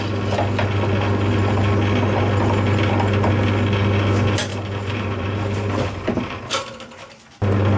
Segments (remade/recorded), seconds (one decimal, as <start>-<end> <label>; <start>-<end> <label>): 0.0-4.5 recorded; 4.5-6.4 remade; 6.4-7.8 recorded